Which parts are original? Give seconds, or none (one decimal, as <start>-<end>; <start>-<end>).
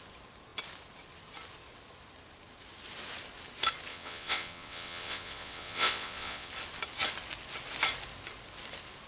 0.0-3.9; 6.5-9.1